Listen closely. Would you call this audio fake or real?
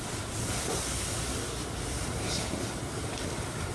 real